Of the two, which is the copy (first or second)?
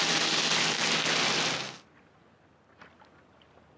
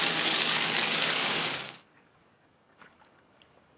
second